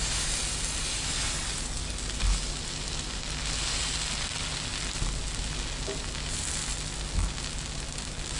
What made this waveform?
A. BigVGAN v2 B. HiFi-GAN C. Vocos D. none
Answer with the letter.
D